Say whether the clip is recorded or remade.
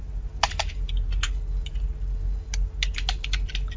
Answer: recorded